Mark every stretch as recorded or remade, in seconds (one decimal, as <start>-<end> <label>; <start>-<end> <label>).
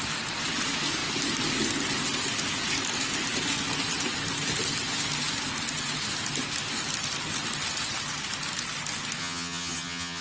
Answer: 0.0-9.2 recorded; 9.2-10.2 remade